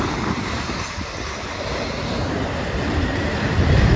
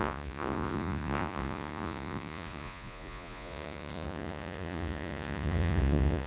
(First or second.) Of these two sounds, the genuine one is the first